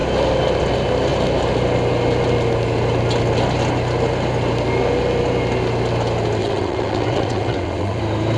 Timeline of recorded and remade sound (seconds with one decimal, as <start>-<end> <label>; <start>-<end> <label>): 0.0-6.4 recorded; 6.4-8.0 remade; 8.0-8.4 recorded